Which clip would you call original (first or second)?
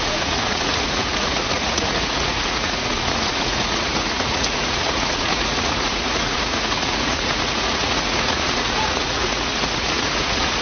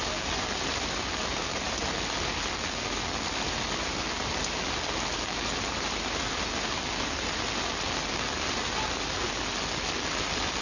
second